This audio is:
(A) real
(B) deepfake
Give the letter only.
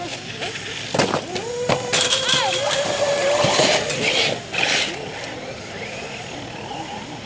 A